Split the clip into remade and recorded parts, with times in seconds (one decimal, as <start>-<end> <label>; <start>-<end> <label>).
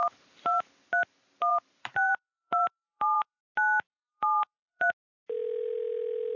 0.0-0.7 remade; 0.7-1.5 recorded; 1.5-3.4 remade; 3.4-3.9 recorded; 3.9-4.9 remade; 4.9-6.4 recorded